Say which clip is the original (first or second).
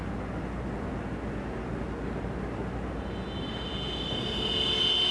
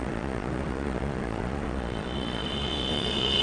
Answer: first